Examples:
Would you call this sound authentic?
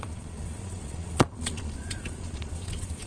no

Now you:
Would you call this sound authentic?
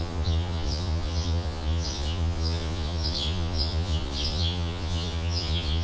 no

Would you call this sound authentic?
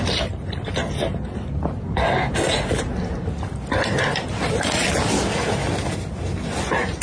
yes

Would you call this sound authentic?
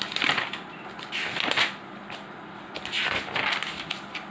yes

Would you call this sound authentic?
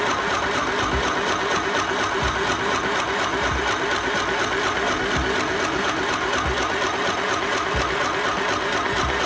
yes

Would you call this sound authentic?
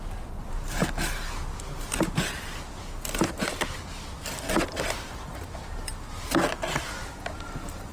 yes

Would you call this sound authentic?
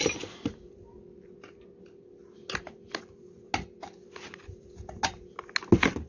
yes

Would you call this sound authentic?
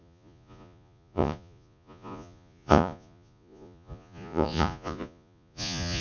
no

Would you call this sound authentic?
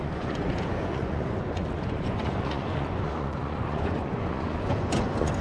no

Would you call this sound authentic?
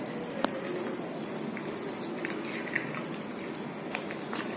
yes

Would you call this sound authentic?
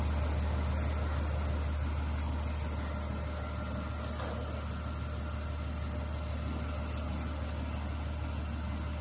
yes